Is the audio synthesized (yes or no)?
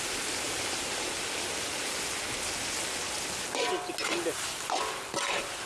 no